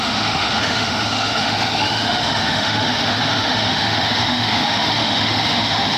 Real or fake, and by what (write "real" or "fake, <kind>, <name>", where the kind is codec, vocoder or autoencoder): fake, autoencoder, DAC-VAE